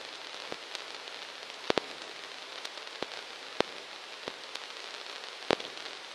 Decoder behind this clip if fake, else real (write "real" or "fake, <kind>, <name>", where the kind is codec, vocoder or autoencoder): real